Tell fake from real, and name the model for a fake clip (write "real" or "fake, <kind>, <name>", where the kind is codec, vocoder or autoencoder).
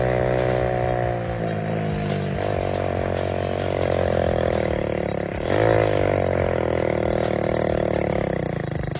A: real